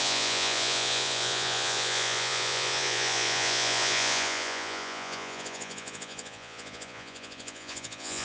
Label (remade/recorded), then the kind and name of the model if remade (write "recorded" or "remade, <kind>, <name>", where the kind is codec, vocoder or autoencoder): remade, vocoder, Vocos